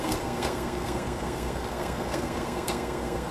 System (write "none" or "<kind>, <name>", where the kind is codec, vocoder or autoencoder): codec, SNAC